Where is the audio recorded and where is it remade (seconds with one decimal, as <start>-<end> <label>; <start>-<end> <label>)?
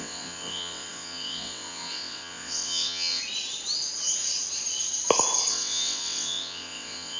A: 0.0-3.2 remade; 3.2-5.5 recorded; 5.5-7.2 remade